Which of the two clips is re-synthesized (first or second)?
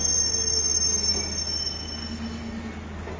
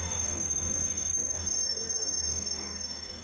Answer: second